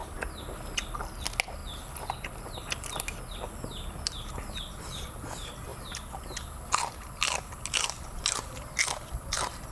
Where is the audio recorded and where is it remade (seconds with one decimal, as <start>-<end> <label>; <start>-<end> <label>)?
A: 0.0-9.7 recorded